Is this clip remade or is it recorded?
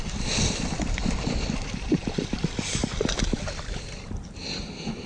recorded